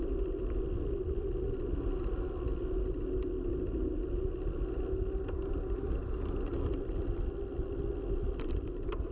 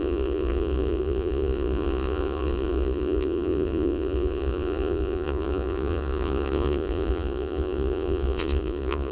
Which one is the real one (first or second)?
first